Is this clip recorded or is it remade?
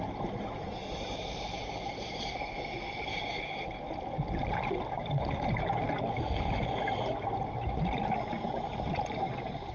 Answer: recorded